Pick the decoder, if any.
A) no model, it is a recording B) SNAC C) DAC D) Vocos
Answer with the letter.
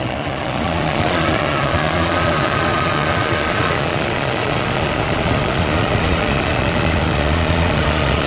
D